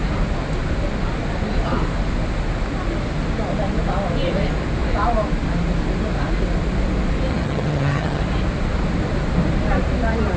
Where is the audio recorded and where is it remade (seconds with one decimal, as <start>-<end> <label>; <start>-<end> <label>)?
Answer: 0.0-7.3 recorded; 7.3-8.2 remade; 8.2-10.4 recorded